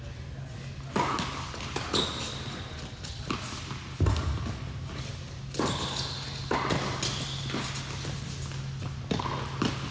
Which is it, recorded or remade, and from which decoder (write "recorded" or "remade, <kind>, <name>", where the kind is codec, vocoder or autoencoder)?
recorded